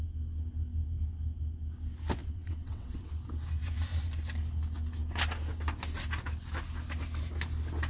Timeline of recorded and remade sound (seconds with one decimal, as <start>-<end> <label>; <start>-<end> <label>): 0.0-2.2 recorded; 2.2-3.1 remade; 3.1-7.9 recorded